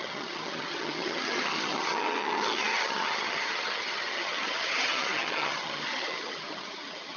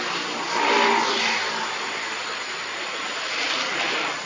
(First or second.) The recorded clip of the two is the second